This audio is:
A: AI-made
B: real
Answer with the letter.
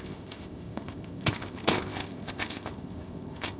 A